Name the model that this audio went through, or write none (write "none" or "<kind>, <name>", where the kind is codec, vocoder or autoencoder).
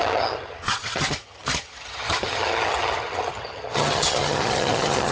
vocoder, HiFi-GAN